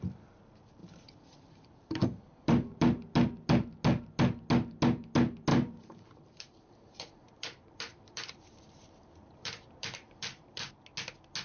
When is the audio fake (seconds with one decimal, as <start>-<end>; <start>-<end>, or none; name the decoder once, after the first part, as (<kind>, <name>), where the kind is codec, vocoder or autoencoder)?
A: 0.8-2.8 (vocoder, BigVGAN v2); 5.5-10.7